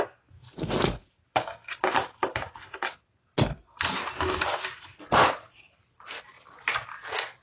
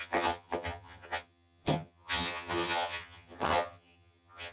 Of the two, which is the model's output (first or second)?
second